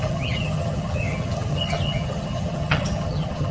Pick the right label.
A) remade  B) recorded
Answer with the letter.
A